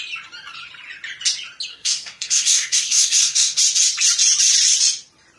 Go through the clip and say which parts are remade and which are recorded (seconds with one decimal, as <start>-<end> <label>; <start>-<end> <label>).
0.0-1.7 recorded; 1.7-3.6 remade; 3.6-5.4 recorded